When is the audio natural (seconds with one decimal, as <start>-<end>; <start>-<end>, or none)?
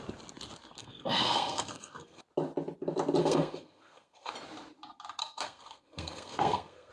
0.0-0.8; 2.2-3.2; 4.3-5.2